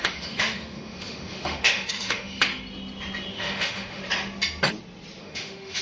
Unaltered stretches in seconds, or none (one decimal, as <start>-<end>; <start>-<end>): 2.5-3.3; 4.0-5.2